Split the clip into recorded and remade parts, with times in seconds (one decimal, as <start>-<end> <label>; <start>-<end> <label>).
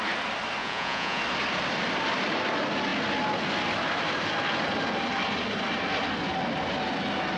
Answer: 0.0-0.6 recorded; 0.6-1.2 remade; 1.2-7.4 recorded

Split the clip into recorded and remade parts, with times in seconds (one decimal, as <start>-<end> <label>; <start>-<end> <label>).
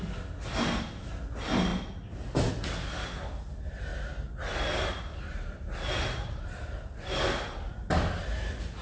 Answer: 0.0-8.8 recorded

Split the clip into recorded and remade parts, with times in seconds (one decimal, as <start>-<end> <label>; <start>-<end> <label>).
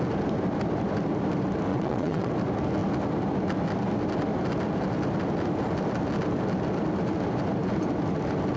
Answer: 0.0-1.7 recorded; 1.7-2.3 remade; 2.3-8.6 recorded